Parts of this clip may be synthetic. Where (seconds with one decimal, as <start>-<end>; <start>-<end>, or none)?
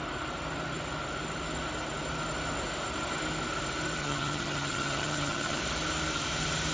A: 4.0-5.6